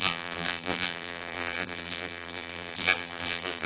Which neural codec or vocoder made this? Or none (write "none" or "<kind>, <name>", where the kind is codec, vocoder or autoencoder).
vocoder, BigVGAN v2